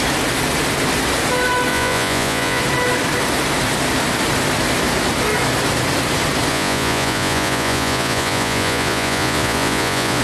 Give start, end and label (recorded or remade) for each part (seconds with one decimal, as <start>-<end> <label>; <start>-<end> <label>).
0.0-1.7 recorded; 1.7-2.6 remade; 2.6-6.5 recorded; 6.5-10.2 remade